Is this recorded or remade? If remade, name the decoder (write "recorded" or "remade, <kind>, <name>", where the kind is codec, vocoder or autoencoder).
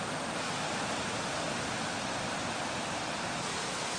recorded